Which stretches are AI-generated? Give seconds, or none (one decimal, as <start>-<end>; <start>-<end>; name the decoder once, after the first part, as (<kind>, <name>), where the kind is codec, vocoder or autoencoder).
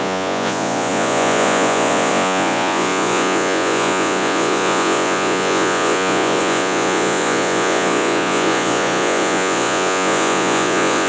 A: 0.0-11.1 (vocoder, Vocos)